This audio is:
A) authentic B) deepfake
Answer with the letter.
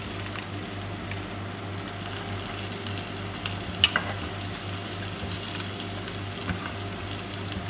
A